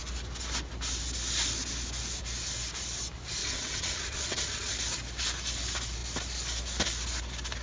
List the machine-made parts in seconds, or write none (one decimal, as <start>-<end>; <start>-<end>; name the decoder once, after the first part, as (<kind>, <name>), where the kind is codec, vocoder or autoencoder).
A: 3.4-4.7 (vocoder, WaveNeXt)